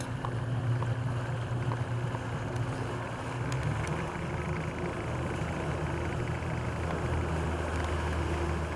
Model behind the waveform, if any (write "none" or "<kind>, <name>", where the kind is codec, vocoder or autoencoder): none